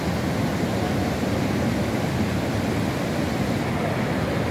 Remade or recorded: recorded